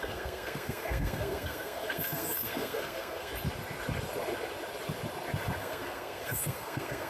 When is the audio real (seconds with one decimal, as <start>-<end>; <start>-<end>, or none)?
3.3-5.6